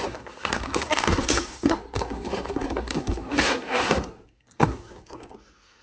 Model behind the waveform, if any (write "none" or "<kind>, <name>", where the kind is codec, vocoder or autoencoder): codec, SNAC